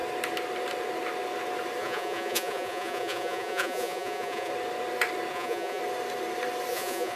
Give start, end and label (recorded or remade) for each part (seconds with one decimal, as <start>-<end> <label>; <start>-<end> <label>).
0.0-1.8 recorded; 1.8-4.5 remade; 4.5-5.3 recorded; 5.3-5.8 remade; 5.8-6.7 recorded; 6.7-7.2 remade